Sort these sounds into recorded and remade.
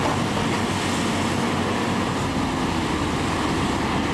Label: recorded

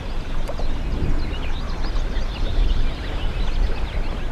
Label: recorded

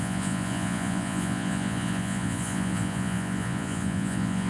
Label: remade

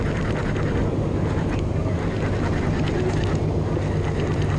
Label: recorded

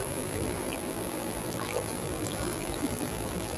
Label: remade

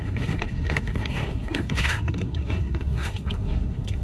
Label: remade